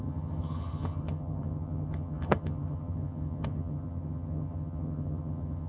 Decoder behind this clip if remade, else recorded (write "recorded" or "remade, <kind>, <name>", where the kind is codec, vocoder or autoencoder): remade, vocoder, HiFi-GAN